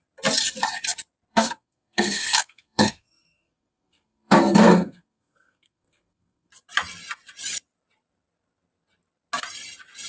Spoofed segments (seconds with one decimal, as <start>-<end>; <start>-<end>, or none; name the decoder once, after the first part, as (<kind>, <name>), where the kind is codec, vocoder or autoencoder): 1.3-6.5 (codec, SNAC)